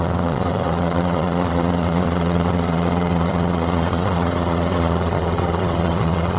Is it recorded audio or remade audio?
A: remade